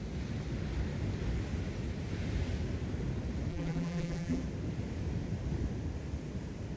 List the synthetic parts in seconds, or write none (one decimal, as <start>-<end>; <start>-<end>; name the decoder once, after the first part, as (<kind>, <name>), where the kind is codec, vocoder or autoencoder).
3.5-4.4 (vocoder, BigVGAN v2)

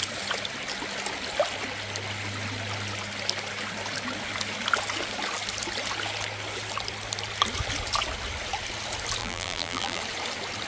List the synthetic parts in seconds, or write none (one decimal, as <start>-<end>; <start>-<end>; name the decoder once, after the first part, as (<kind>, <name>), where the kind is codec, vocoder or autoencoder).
9.2-10.0 (vocoder, BigVGAN v2)

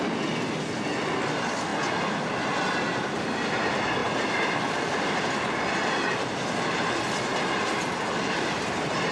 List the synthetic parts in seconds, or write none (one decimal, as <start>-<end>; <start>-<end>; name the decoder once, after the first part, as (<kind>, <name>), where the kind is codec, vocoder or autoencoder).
none

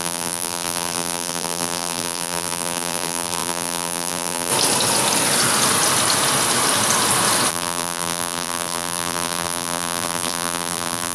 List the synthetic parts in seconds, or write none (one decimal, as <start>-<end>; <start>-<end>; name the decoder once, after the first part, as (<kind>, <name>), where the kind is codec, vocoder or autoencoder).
0.0-4.5 (vocoder, BigVGAN v2); 7.5-11.1

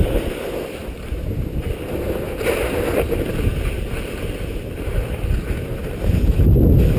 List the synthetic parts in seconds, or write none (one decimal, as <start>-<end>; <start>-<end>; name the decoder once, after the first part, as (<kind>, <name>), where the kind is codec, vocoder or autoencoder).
0.8-2.7 (vocoder, BigVGAN v2)

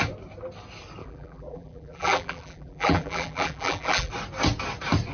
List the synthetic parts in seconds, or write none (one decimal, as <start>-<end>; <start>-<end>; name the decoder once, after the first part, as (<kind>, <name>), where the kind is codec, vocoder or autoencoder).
1.0-4.1 (vocoder, BigVGAN v2)

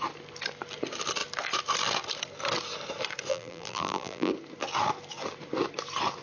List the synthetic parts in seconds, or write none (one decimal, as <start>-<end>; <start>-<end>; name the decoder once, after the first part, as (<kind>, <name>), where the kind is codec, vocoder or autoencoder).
3.3-4.3 (vocoder, BigVGAN v2)

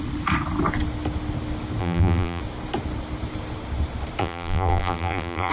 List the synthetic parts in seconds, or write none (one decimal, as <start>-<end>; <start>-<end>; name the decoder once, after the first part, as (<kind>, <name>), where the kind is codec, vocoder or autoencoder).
1.8-2.4 (vocoder, BigVGAN v2); 4.2-5.5